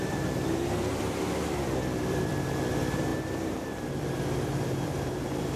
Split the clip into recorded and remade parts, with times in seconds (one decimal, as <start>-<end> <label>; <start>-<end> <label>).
0.0-3.1 remade; 3.1-4.0 recorded; 4.0-5.6 remade